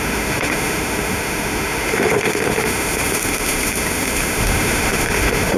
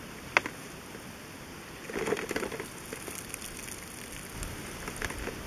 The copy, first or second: first